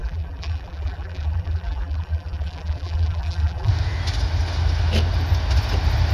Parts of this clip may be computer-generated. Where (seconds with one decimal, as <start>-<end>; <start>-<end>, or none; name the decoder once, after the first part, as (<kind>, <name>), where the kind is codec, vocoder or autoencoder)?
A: 0.0-3.7 (vocoder, BigVGAN v2)